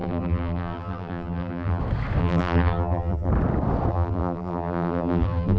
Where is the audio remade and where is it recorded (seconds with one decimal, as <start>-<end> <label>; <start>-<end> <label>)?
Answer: 0.0-1.8 remade; 1.8-2.2 recorded; 2.2-3.3 remade; 3.3-3.9 recorded; 3.9-5.6 remade